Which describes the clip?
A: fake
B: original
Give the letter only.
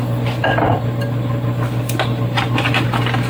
B